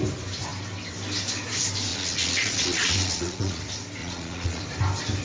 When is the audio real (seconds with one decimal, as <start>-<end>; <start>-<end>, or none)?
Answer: 0.0-1.9; 3.6-4.0; 4.6-5.2